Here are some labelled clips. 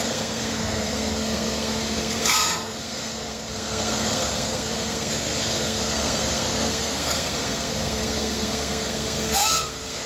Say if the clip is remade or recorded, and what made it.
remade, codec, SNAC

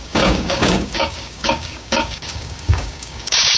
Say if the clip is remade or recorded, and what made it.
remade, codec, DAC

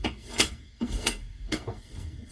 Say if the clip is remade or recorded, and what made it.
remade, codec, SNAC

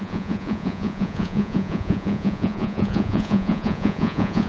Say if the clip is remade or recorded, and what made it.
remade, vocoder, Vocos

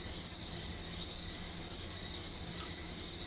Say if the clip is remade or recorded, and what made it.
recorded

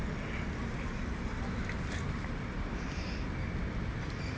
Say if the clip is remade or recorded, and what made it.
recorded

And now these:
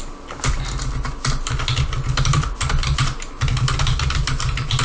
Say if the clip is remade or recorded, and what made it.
recorded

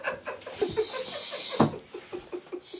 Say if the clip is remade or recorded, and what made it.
recorded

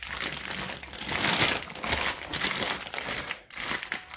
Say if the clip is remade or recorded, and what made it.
recorded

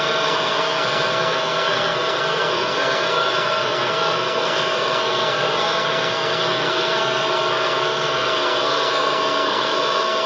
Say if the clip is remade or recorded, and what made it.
remade, codec, SNAC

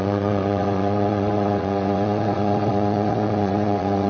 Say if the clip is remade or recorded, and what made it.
remade, vocoder, Vocos